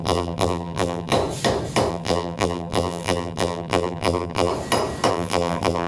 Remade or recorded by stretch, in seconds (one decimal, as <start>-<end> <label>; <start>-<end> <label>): 0.0-1.1 remade; 1.1-1.9 recorded; 1.9-4.5 remade; 4.5-5.1 recorded; 5.1-5.9 remade